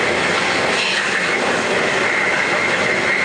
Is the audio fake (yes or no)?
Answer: no